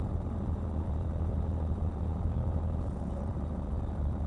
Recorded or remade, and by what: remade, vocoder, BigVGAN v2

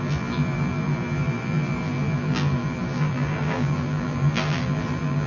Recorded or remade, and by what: remade, vocoder, BigVGAN v2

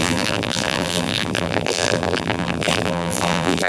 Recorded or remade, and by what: remade, vocoder, BigVGAN v2